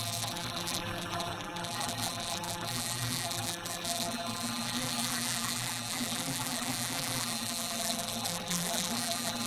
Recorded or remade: remade